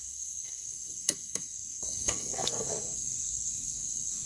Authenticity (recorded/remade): remade